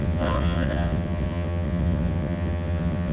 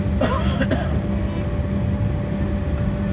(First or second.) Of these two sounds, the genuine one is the second